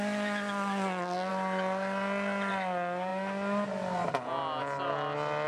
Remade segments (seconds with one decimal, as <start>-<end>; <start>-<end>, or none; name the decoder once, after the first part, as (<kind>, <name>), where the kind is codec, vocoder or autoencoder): none